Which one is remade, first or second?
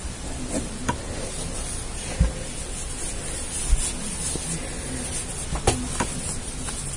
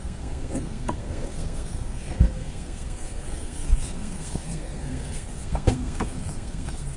second